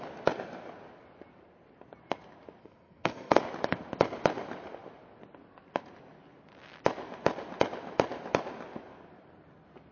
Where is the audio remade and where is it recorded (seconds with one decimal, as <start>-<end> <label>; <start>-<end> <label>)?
0.0-2.6 recorded; 2.6-3.4 remade; 3.4-9.9 recorded